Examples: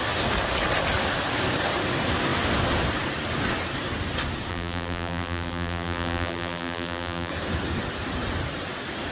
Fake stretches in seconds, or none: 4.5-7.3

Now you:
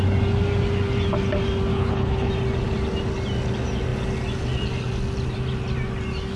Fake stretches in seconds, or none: 1.7-2.3

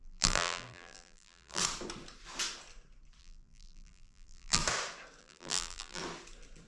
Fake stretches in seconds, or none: 0.0-1.6; 3.2-4.6; 5.2-6.0

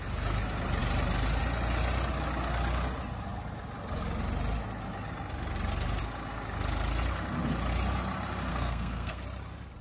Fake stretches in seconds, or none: 8.5-9.2